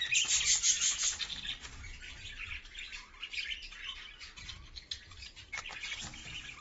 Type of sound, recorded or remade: recorded